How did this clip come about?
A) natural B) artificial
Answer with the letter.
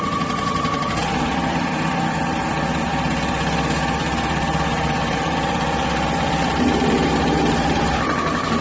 B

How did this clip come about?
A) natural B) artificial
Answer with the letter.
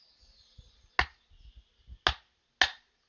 A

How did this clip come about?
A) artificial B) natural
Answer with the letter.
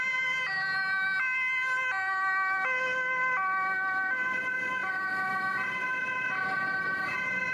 B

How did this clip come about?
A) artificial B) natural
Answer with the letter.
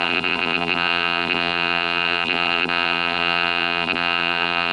A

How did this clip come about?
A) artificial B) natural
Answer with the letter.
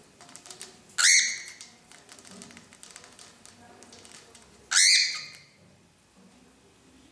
B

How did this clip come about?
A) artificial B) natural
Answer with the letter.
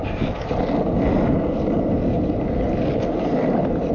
B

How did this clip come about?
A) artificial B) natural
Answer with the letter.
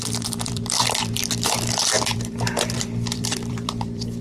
A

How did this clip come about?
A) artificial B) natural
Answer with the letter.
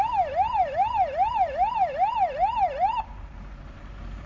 A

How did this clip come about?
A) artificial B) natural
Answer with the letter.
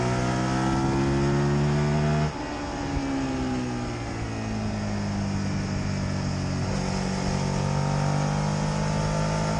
B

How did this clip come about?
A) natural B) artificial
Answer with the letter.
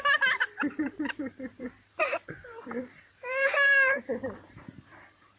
B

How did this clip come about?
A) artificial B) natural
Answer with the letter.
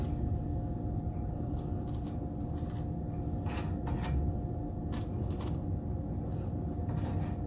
B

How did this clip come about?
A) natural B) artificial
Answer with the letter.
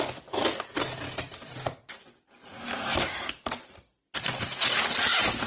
A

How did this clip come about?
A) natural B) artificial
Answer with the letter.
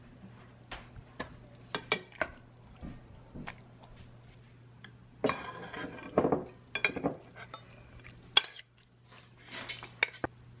A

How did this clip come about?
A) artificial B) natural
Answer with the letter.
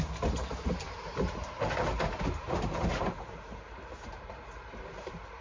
A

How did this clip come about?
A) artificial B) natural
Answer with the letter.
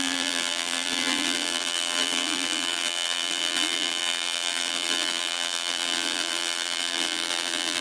A